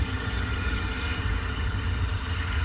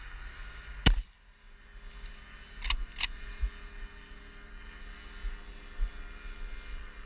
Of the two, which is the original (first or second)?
second